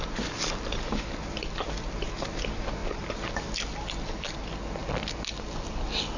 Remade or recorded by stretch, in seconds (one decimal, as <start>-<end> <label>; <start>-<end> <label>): 0.0-6.2 recorded